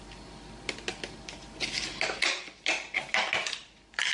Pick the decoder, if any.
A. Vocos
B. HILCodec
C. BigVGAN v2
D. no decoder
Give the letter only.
D